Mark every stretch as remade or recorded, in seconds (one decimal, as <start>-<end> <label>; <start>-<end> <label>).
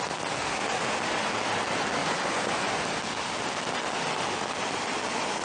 0.0-2.0 recorded; 2.0-2.8 remade; 2.8-5.4 recorded